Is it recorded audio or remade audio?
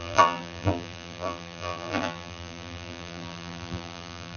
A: remade